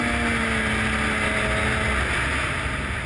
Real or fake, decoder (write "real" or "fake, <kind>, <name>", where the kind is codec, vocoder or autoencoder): real